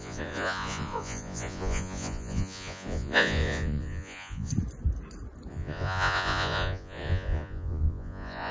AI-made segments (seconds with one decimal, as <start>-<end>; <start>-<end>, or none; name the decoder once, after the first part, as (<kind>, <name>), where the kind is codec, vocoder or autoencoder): 0.0-4.5 (vocoder, Vocos); 5.5-8.5